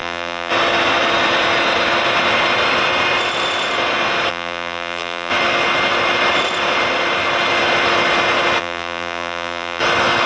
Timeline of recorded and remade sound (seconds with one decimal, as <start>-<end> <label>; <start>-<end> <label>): 0.0-0.5 remade; 0.5-4.3 recorded; 4.3-5.3 remade; 5.3-8.6 recorded; 8.6-9.8 remade; 9.8-10.3 recorded

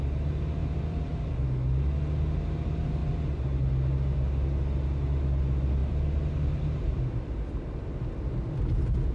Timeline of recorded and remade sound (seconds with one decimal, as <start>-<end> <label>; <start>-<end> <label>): 0.0-0.6 recorded; 0.6-1.3 remade; 1.3-5.8 recorded; 5.8-7.9 remade; 7.9-9.1 recorded

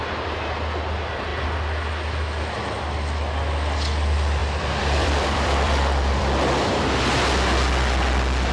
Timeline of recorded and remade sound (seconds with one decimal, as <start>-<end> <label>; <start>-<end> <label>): 0.0-4.4 recorded; 4.4-6.2 remade; 6.2-8.5 recorded